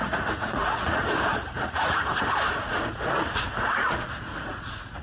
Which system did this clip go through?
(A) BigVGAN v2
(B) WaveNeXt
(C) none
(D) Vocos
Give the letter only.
D